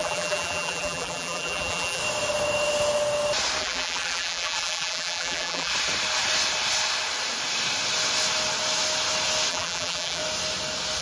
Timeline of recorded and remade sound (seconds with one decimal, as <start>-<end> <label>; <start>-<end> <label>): 0.0-2.0 remade; 2.0-3.6 recorded; 3.6-5.7 remade; 5.7-9.5 recorded; 9.5-10.2 remade; 10.2-11.0 recorded